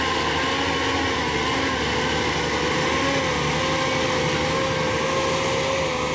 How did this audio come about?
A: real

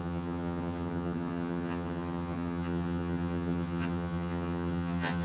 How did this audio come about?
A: fake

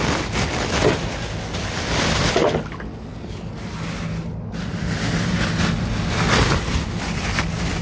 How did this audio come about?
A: real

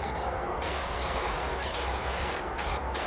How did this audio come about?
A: fake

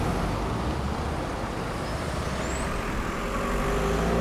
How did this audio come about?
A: real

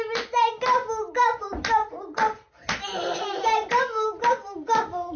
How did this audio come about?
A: real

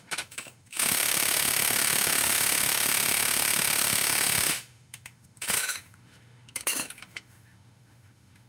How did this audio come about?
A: fake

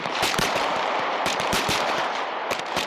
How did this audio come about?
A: fake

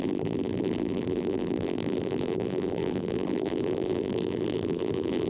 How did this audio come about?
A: fake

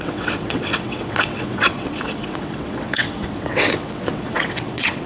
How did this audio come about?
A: fake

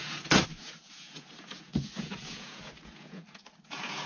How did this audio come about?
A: fake